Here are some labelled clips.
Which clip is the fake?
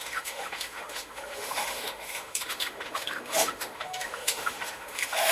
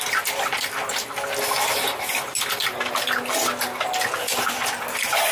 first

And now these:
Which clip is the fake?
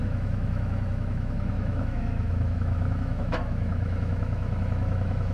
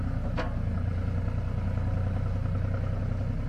first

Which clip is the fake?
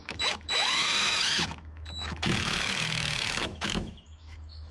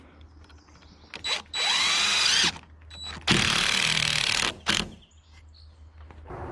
first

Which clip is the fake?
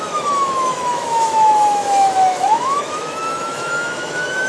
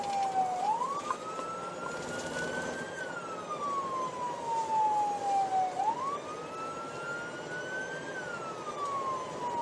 first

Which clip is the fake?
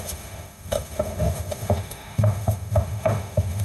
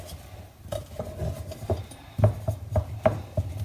first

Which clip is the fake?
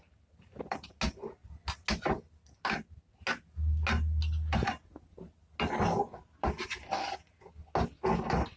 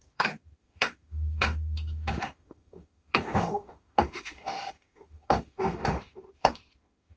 second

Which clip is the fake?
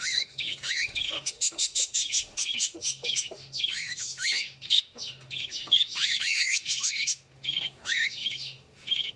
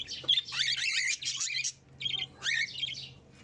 first